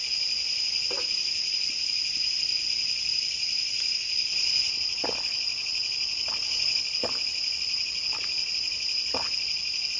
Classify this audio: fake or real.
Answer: real